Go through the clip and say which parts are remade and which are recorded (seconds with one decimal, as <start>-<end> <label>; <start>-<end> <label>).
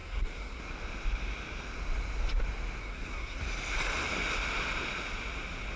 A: 0.0-0.6 remade; 0.6-2.8 recorded; 2.8-3.4 remade; 3.4-5.8 recorded